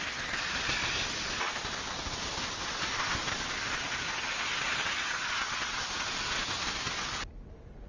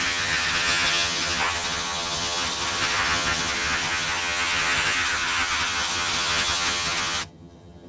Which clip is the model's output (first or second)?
second